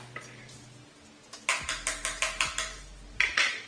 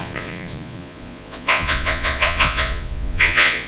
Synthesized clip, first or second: second